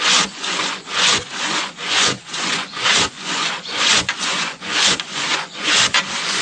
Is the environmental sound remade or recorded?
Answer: remade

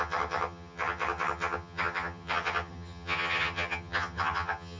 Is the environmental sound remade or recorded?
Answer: remade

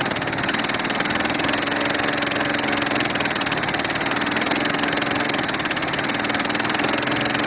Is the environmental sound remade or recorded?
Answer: recorded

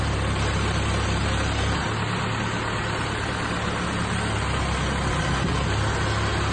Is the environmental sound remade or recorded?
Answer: recorded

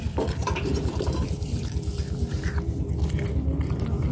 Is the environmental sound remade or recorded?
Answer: recorded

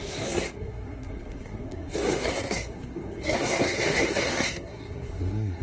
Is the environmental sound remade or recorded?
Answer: remade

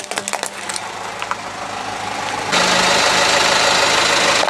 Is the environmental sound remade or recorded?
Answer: recorded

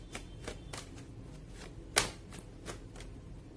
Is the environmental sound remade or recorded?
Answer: recorded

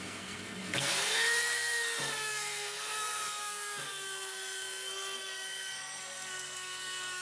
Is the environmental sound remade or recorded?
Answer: remade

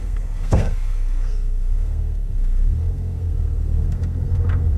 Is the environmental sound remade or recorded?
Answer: remade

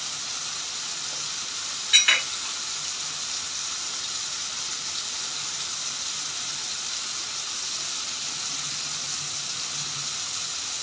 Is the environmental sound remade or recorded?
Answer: recorded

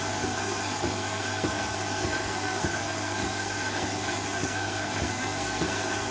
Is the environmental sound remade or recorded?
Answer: remade